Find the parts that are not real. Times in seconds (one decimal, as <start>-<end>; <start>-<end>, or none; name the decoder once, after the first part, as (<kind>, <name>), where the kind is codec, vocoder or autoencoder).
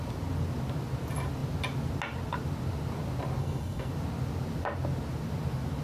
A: 3.4-3.9 (codec, SNAC)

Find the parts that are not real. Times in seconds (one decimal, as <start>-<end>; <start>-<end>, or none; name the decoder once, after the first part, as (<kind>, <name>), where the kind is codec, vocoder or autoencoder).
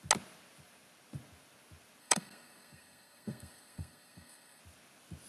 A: 2.0-4.6 (codec, SNAC)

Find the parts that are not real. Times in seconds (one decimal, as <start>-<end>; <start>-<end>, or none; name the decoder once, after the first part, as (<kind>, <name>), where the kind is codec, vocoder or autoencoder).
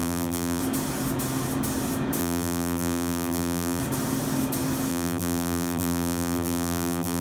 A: 0.0-0.6 (vocoder, BigVGAN v2); 2.2-3.8; 4.9-7.2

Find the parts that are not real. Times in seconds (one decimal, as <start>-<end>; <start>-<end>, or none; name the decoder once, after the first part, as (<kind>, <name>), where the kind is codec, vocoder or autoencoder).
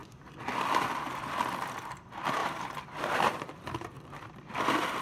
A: 2.4-4.6 (vocoder, BigVGAN v2)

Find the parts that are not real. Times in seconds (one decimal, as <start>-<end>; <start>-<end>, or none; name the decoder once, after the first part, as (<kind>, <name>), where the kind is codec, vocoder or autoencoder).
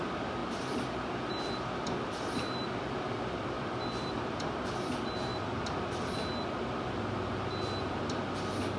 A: 0.0-5.3 (vocoder, BigVGAN v2)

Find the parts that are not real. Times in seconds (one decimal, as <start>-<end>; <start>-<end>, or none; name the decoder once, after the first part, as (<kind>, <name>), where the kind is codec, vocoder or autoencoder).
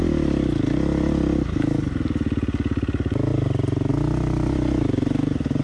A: none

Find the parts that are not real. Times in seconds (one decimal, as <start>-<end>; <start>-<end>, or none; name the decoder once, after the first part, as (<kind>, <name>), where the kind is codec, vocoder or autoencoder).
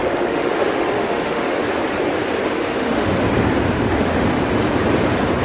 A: 0.0-1.6 (autoencoder, DAC-VAE); 2.6-3.1; 3.6-4.4